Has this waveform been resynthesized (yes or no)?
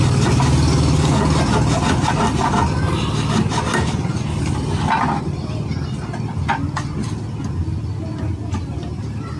no